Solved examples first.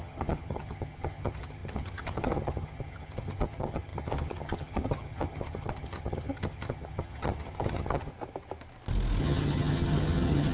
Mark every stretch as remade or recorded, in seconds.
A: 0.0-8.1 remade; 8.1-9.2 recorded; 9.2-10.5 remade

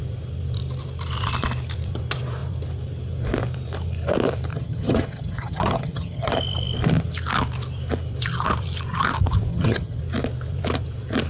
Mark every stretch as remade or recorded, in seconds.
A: 0.0-4.5 recorded; 4.5-6.3 remade; 6.3-9.5 recorded; 9.5-10.0 remade; 10.0-11.3 recorded

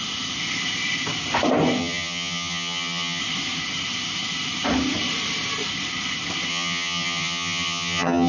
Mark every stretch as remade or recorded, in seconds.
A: 0.0-1.8 recorded; 1.8-3.2 remade; 3.2-6.5 recorded; 6.5-8.3 remade

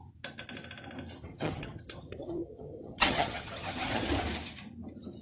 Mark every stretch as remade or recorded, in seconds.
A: 0.0-1.3 recorded; 1.3-4.1 remade; 4.1-5.2 recorded

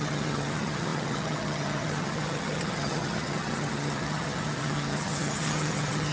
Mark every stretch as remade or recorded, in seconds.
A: 0.0-6.1 remade

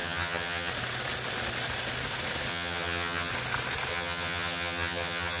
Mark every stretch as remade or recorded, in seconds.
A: 0.0-0.7 remade; 0.7-2.5 recorded; 2.5-3.3 remade; 3.3-3.9 recorded; 3.9-5.4 remade